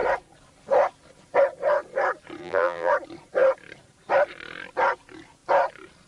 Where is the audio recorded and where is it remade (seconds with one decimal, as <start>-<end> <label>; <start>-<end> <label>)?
0.0-2.4 recorded; 2.4-2.9 remade; 2.9-6.1 recorded

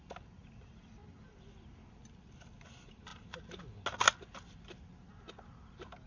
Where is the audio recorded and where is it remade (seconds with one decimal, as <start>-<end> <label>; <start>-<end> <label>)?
0.0-6.1 recorded

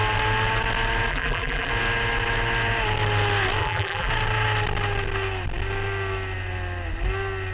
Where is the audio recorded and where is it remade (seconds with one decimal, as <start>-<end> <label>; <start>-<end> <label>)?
0.0-1.1 recorded; 1.1-1.7 remade; 1.7-3.6 recorded; 3.6-4.1 remade; 4.1-7.5 recorded

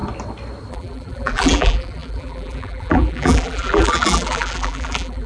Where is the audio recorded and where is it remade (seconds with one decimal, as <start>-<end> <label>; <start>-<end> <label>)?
0.0-0.7 recorded; 0.7-5.3 remade

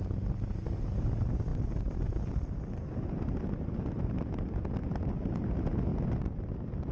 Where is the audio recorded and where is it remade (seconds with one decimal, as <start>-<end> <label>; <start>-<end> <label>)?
0.0-6.9 recorded

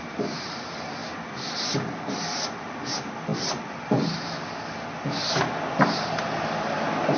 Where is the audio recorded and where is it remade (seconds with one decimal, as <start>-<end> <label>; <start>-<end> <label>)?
0.0-1.0 remade; 1.0-2.5 recorded; 2.5-3.3 remade; 3.3-5.3 recorded; 5.3-7.2 remade